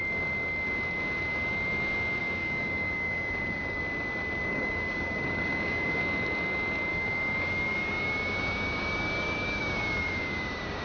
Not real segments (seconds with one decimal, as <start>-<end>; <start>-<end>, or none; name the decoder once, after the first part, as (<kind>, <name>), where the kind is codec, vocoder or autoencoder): 2.2-3.8 (codec, DAC); 4.5-6.0; 6.9-10.8